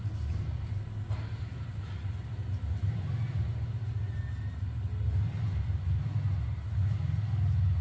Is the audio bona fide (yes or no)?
yes